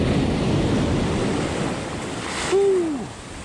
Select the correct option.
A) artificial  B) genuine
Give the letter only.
B